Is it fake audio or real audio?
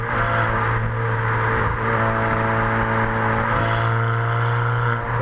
real